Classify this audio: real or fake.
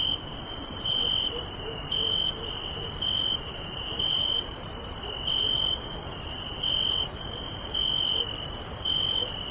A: real